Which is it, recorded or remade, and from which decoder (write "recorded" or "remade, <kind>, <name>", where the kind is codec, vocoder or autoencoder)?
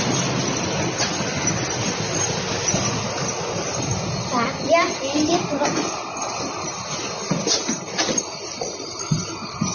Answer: recorded